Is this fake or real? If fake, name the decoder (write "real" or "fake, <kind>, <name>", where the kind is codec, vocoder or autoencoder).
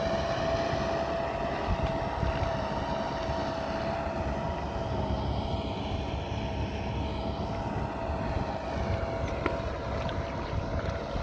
real